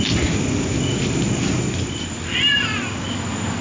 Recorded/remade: recorded